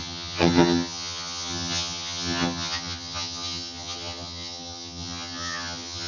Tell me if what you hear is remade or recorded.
remade